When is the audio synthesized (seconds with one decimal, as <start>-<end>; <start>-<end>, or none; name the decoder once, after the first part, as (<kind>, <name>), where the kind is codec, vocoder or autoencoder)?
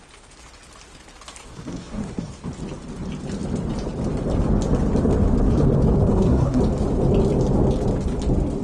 1.4-2.4 (codec, SNAC); 6.1-6.6